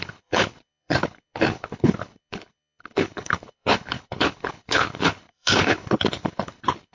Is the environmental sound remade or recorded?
remade